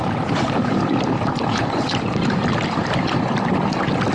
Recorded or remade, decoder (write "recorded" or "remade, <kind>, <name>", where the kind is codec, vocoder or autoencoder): remade, vocoder, BigVGAN v2